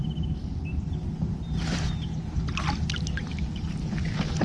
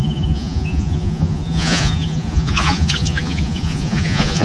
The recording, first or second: first